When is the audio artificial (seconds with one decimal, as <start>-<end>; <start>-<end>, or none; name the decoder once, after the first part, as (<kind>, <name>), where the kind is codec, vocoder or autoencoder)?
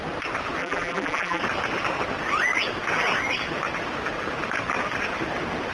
0.6-1.4 (vocoder, BigVGAN v2)